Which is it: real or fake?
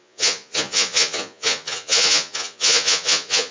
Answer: fake